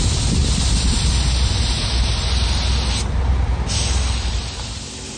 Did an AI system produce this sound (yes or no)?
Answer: no